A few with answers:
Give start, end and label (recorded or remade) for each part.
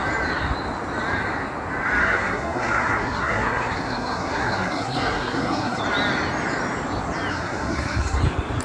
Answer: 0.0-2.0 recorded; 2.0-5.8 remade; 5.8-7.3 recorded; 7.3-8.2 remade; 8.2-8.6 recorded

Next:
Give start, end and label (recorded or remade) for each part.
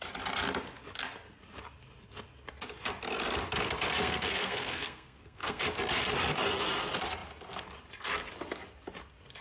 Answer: 0.0-4.0 recorded; 4.0-5.6 remade; 5.6-9.4 recorded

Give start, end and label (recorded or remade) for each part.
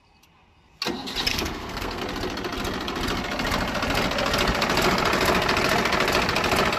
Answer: 0.0-1.3 recorded; 1.3-2.0 remade; 2.0-6.8 recorded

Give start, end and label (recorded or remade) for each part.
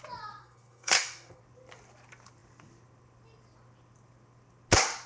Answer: 0.0-0.4 recorded; 0.4-1.4 remade; 1.4-5.1 recorded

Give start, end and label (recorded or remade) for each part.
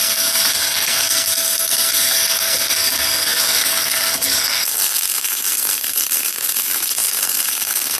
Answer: 0.0-8.0 remade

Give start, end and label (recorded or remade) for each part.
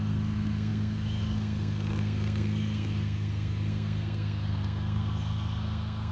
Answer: 0.0-6.1 remade